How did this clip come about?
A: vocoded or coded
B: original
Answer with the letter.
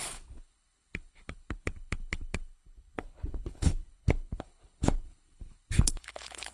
A